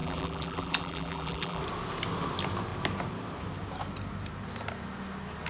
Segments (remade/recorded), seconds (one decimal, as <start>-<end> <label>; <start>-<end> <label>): 0.0-1.6 remade; 1.6-5.5 recorded